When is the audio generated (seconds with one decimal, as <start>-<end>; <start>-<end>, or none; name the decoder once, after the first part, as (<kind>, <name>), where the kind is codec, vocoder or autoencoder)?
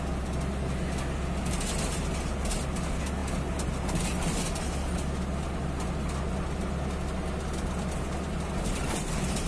none